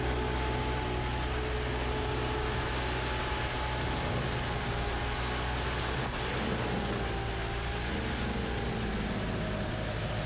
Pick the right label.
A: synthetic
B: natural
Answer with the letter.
B